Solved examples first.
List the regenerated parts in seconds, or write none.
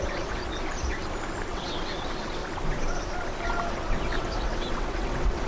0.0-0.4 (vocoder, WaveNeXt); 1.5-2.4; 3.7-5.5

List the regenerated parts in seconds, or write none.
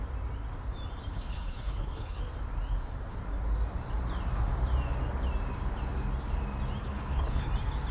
1.1-2.2 (codec, HILCodec); 6.8-7.5